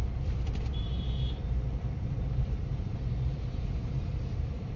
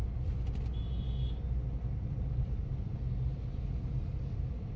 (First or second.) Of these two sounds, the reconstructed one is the first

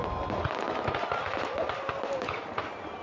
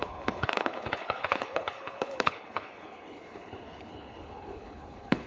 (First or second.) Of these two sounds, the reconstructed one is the second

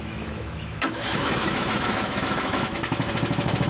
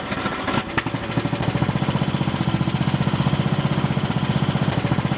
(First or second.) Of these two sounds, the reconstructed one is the first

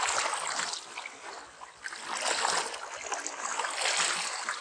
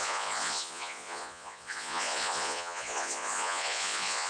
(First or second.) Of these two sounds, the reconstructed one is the second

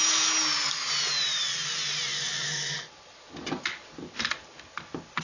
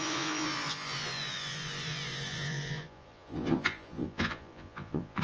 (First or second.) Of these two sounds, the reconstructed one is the second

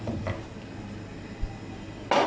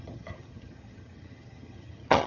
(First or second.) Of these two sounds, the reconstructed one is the second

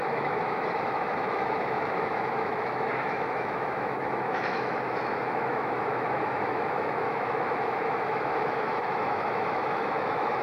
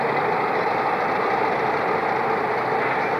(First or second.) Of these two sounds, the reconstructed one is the first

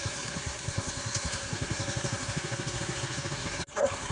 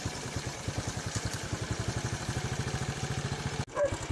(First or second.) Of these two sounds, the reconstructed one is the first